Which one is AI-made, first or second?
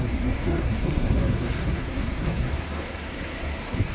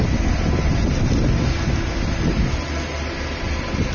first